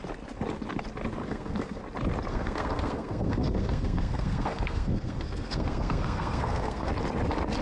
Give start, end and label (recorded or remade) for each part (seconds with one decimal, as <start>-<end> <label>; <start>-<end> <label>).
0.0-1.2 recorded; 1.2-1.8 remade; 1.8-2.3 recorded; 2.3-6.9 remade; 6.9-7.6 recorded